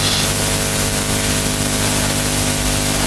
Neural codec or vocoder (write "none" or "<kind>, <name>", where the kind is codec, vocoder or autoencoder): none